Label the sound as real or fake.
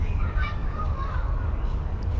fake